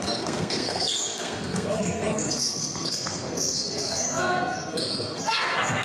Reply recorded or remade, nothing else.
remade